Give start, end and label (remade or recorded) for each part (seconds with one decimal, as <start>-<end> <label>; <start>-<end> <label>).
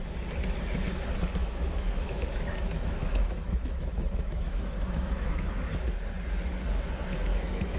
0.0-1.4 recorded; 1.4-5.5 remade; 5.5-7.3 recorded; 7.3-7.8 remade